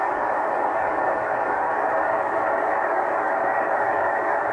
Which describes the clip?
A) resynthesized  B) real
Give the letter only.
A